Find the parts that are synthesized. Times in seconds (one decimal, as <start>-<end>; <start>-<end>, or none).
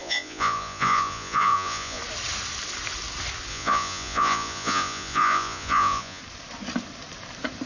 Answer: 0.0-2.0; 3.5-6.2